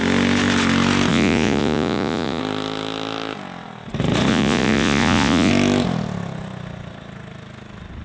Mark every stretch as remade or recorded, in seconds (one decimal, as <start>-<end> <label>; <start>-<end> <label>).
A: 0.0-1.1 recorded; 1.1-2.4 remade; 2.4-4.3 recorded; 4.3-5.5 remade; 5.5-8.0 recorded